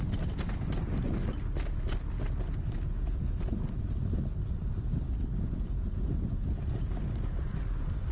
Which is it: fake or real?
real